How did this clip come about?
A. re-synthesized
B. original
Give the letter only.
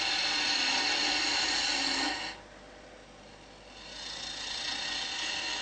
B